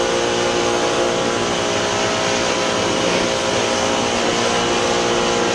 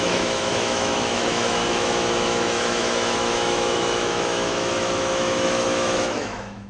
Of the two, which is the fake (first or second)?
second